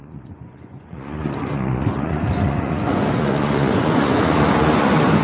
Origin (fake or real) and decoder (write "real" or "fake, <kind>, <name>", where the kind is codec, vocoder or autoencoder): fake, vocoder, Vocos